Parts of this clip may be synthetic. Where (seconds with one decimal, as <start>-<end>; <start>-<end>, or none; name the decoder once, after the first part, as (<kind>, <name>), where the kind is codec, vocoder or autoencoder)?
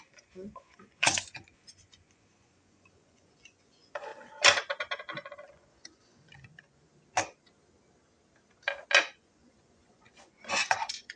0.0-4.1 (vocoder, Vocos); 5.0-6.9; 9.0-11.2